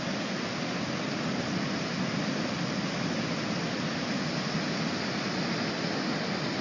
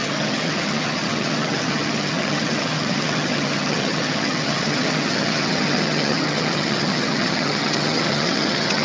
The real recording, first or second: first